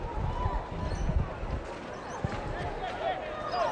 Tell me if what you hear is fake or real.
real